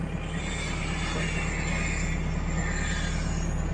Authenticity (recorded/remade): recorded